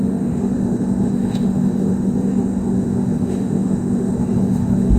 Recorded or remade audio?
remade